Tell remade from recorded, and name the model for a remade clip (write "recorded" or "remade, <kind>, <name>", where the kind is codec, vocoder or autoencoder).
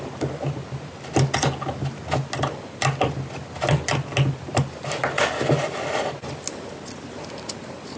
recorded